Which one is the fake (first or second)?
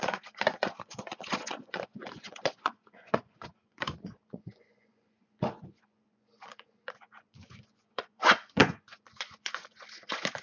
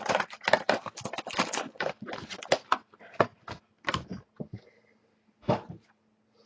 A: first